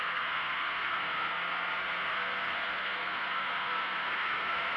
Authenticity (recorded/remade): remade